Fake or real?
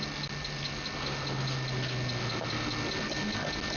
real